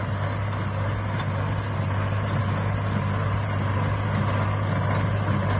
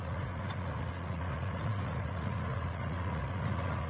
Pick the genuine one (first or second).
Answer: first